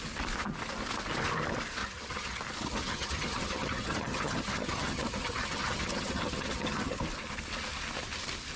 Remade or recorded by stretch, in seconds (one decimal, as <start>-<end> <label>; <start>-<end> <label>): 0.0-1.8 recorded; 1.8-2.4 remade; 2.4-2.8 recorded; 2.8-7.0 remade; 7.0-8.6 recorded